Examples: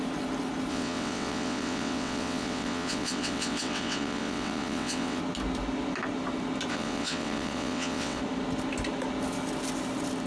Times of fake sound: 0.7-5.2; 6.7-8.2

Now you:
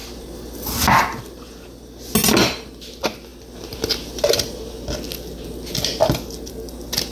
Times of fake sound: none

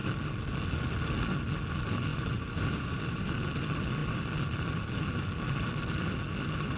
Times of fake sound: 2.1-3.5

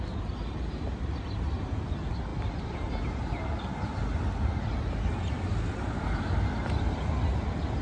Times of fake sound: none

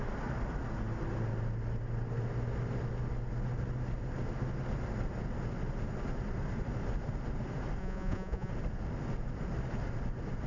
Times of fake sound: 7.8-8.5

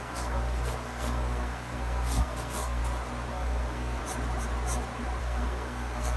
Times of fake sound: 0.0-2.8; 3.3-4.0; 5.2-6.2

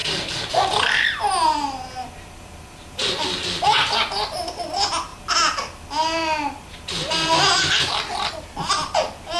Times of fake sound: none

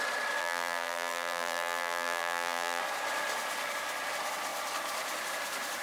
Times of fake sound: 0.4-2.8